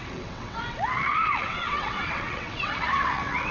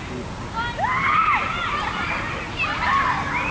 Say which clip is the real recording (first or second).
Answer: second